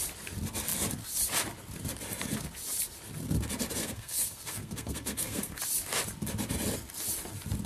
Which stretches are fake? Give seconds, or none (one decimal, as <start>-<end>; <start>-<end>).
3.8-5.6